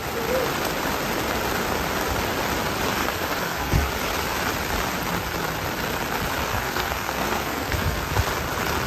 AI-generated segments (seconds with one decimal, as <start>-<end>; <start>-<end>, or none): 3.0-3.9; 6.4-8.1